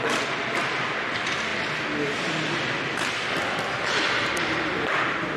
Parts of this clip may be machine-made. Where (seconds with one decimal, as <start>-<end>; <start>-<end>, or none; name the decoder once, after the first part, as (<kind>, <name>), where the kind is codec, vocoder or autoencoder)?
none